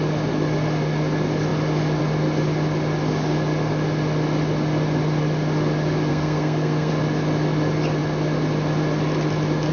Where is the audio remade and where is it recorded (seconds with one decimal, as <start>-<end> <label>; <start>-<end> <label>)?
0.0-6.1 recorded; 6.1-6.9 remade; 6.9-9.7 recorded